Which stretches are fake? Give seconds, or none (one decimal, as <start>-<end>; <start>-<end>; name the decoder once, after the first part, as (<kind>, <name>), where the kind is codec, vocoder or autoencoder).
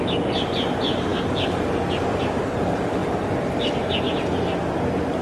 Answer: none